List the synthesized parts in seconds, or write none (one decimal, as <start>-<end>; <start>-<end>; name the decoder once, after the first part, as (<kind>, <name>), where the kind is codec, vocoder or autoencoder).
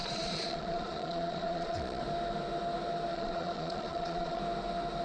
0.0-2.0 (vocoder, Vocos); 3.1-4.4